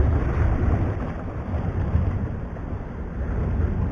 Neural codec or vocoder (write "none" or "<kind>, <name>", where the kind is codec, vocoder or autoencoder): none